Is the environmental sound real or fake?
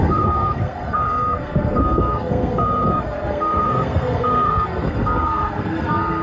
fake